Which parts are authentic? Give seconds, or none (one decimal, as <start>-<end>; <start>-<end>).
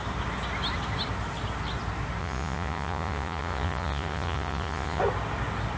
0.0-2.2; 5.0-5.8